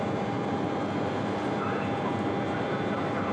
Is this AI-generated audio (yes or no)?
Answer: no